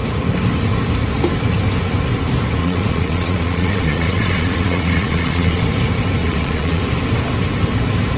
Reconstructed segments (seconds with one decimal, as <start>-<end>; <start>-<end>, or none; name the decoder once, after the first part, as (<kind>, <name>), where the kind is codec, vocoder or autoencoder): 2.6-5.6 (vocoder, Vocos); 6.2-6.8